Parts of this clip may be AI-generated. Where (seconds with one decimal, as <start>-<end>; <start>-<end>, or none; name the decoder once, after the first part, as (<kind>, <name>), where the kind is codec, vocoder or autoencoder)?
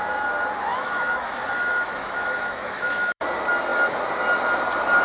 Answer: 0.7-3.2 (autoencoder, DAC-VAE)